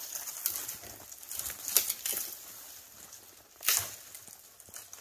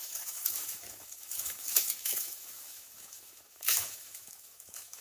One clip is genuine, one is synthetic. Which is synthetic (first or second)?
second